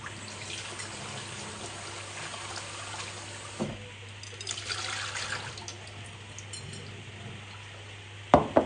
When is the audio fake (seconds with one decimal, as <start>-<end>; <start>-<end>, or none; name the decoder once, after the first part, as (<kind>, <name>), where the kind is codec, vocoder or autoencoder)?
none